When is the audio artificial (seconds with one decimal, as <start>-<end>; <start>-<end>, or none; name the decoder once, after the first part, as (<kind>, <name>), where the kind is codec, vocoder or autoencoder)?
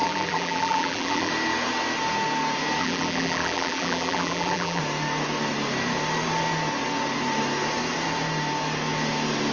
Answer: 0.0-1.3 (vocoder, BigVGAN v2); 2.8-4.8